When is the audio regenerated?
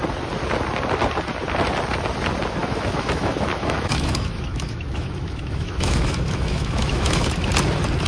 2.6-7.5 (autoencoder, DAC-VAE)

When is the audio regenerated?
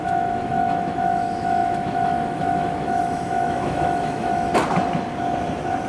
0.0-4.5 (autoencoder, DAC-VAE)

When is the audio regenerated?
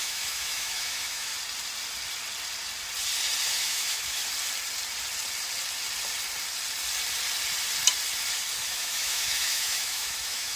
0.0-1.3 (autoencoder, DAC-VAE); 3.5-4.2; 8.6-10.6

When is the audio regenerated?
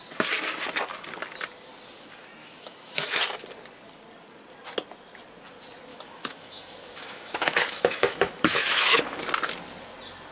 2.4-3.2 (autoencoder, DAC-VAE); 5.9-9.2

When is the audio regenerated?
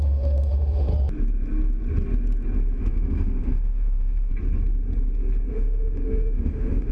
0.0-0.9 (autoencoder, DAC-VAE); 2.8-4.3; 5.5-6.9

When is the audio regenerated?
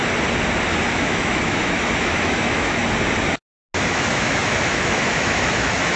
0.9-2.8 (autoencoder, DAC-VAE); 3.8-6.0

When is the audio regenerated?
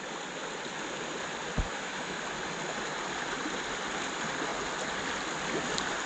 1.7-2.2 (autoencoder, DAC-VAE)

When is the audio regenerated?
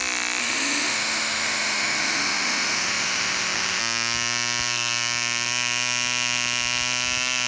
0.4-3.8 (autoencoder, DAC-VAE)